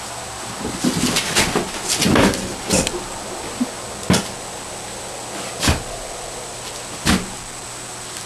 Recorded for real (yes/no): yes